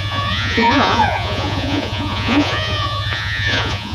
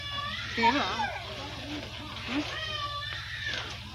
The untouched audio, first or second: second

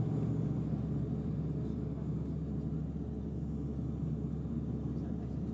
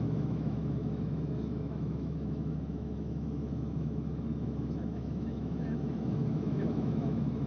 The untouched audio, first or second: first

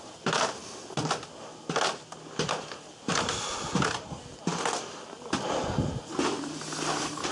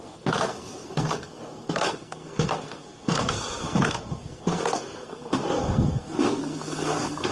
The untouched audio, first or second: first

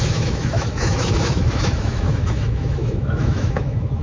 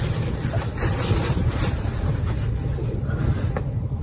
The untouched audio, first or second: second